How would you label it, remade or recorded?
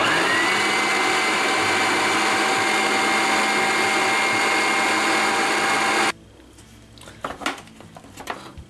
recorded